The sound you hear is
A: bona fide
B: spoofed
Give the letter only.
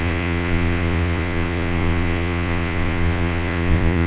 B